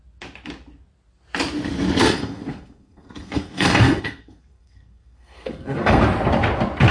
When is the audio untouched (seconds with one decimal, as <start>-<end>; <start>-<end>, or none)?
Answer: 0.0-2.0; 6.0-6.9